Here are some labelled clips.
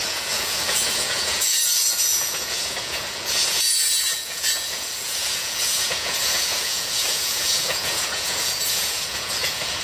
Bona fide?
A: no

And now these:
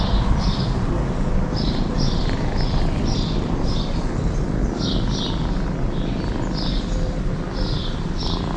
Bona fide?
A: yes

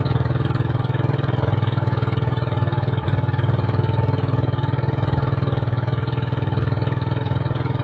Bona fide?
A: no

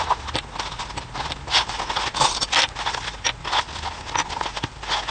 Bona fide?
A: yes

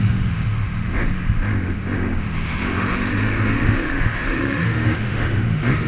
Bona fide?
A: no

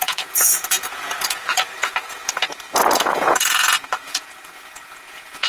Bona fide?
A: no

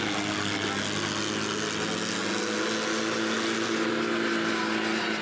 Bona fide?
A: yes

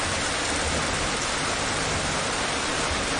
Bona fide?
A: yes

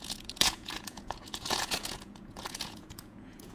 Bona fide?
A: no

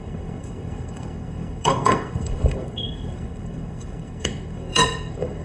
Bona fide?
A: no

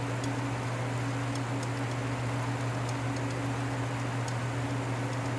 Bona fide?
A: yes